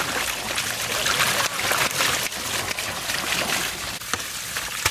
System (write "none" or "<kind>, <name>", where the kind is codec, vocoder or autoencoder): none